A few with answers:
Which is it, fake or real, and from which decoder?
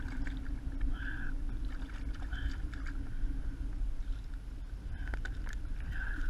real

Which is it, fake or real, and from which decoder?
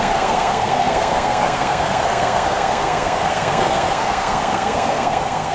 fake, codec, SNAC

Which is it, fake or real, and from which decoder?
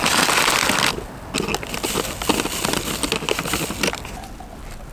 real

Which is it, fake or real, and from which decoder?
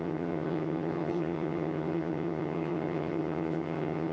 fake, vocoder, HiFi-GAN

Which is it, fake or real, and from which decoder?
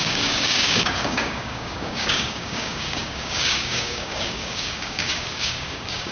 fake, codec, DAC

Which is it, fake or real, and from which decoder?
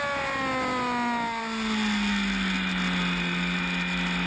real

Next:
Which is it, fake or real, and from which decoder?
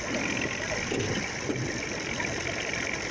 real